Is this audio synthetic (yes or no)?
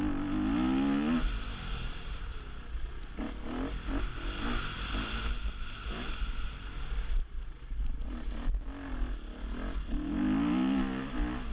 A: no